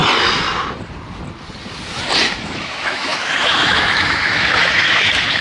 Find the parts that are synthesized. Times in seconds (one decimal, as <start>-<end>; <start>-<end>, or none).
2.2-5.4